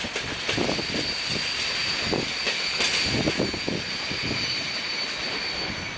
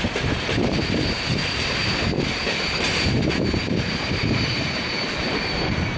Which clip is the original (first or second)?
first